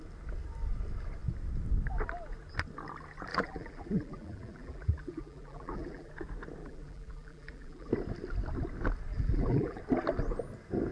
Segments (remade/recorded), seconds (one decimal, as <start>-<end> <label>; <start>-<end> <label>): 0.0-3.3 recorded; 3.3-6.1 remade; 6.1-6.6 recorded; 6.6-7.9 remade; 7.9-9.1 recorded; 9.1-9.8 remade; 9.8-10.9 recorded